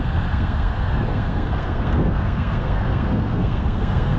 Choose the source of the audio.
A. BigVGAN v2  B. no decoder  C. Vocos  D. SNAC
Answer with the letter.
D